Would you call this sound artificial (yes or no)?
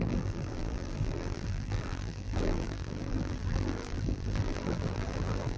yes